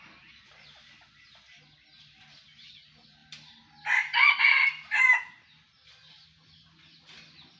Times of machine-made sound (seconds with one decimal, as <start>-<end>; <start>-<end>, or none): 3.2-4.4